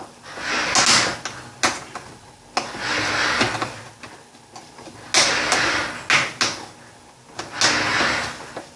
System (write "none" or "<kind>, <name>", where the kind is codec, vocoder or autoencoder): none